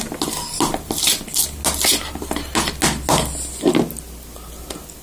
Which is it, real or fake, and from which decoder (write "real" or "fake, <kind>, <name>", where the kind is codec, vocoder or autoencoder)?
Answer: real